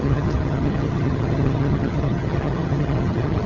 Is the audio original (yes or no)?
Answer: no